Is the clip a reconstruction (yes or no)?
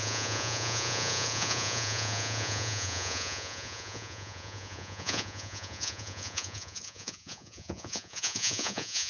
yes